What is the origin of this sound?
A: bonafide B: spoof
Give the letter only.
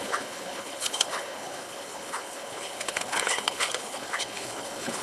B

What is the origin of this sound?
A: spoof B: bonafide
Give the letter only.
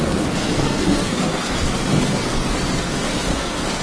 A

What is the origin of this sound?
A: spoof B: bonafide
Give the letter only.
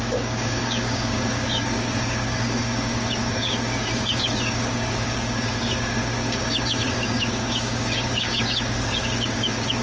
A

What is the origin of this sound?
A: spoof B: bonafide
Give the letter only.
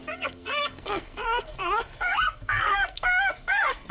A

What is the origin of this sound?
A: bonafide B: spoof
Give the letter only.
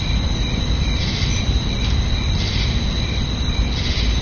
A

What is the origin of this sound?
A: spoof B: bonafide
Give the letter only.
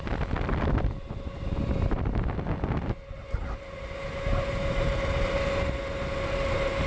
B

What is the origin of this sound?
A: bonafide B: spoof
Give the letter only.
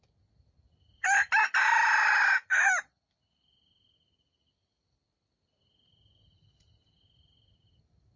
A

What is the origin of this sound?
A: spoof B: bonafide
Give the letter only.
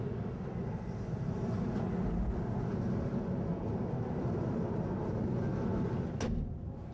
B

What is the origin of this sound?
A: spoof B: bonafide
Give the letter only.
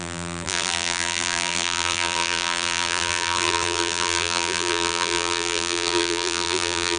A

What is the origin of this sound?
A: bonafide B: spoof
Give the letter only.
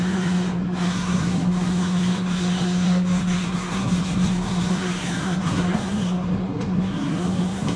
B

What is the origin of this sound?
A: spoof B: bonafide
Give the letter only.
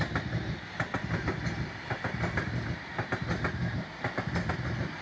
B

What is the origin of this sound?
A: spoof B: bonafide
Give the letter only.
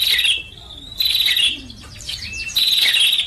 B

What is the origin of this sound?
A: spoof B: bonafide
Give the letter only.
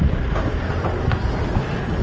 B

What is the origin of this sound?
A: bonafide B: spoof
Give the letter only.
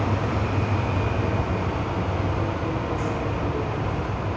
A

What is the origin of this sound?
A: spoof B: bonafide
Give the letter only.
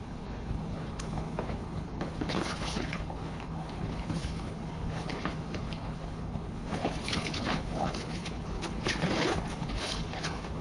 A